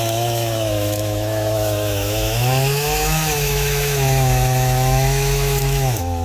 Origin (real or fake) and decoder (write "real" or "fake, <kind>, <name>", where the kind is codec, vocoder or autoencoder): fake, autoencoder, DAC-VAE